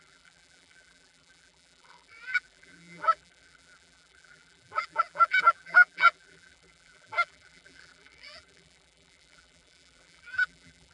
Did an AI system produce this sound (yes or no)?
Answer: yes